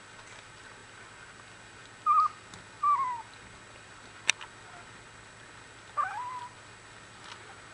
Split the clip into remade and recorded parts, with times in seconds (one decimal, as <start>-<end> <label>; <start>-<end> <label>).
0.0-7.7 recorded

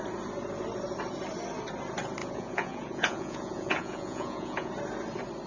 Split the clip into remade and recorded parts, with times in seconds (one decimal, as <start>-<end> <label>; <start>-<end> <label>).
0.0-2.2 recorded; 2.2-4.7 remade; 4.7-5.5 recorded

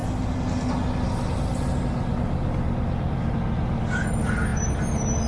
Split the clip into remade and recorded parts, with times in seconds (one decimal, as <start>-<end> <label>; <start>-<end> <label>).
0.0-5.3 recorded

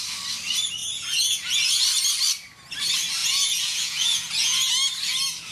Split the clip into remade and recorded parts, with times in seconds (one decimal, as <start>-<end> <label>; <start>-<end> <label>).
0.0-0.8 recorded; 0.8-1.8 remade; 1.8-3.2 recorded; 3.2-4.7 remade; 4.7-5.5 recorded